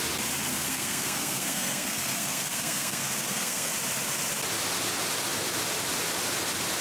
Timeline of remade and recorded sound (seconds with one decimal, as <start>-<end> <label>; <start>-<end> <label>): 0.0-0.5 recorded; 0.5-3.7 remade; 3.7-6.8 recorded